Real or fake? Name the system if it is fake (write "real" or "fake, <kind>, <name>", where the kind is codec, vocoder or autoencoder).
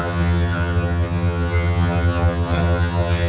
fake, vocoder, HiFi-GAN